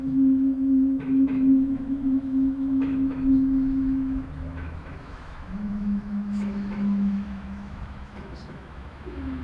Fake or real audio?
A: fake